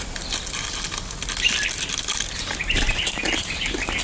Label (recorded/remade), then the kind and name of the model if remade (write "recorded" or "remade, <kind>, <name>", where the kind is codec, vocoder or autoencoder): recorded